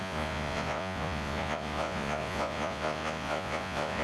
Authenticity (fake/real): fake